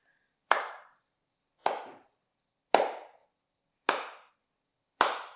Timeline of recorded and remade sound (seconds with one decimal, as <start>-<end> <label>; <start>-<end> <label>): 0.0-5.4 recorded